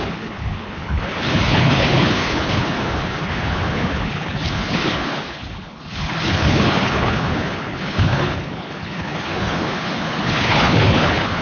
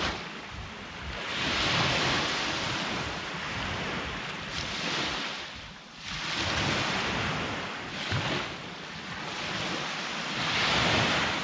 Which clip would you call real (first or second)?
second